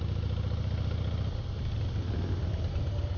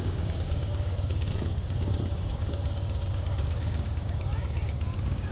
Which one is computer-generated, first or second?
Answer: second